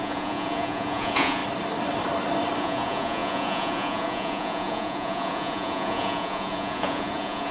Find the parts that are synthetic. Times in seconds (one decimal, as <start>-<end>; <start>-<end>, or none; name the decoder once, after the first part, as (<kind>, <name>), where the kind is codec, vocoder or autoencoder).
0.0-1.4 (vocoder, Vocos); 2.6-7.5